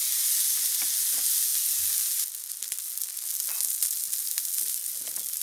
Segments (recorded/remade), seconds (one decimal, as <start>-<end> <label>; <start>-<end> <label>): 0.0-5.4 recorded